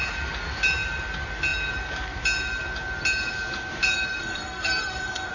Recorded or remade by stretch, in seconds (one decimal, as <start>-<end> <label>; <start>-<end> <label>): 0.0-4.2 recorded; 4.2-5.3 remade